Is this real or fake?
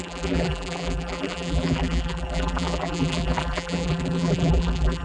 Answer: fake